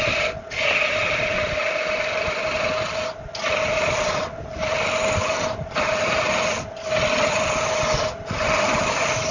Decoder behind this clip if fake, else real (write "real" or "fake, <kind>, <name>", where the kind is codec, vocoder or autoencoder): real